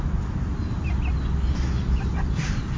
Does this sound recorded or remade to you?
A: recorded